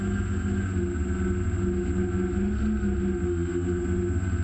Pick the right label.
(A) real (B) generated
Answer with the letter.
A